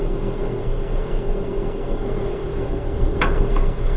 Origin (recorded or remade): remade